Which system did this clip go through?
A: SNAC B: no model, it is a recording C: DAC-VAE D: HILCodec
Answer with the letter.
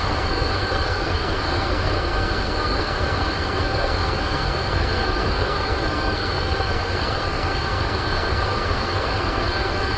A